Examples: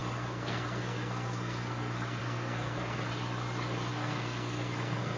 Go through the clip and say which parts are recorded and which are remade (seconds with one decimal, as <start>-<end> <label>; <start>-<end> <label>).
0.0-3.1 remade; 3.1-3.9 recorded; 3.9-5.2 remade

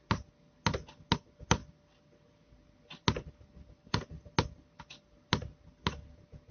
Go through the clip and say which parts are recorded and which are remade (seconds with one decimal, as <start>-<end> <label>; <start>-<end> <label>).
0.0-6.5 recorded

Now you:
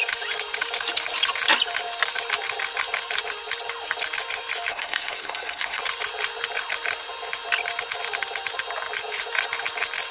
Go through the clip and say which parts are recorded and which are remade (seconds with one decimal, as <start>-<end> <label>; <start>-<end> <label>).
0.0-4.7 recorded; 4.7-5.8 remade; 5.8-10.1 recorded

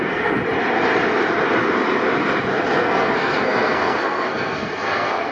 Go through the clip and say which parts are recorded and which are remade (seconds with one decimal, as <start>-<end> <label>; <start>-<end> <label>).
0.0-0.4 remade; 0.4-2.7 recorded; 2.7-5.3 remade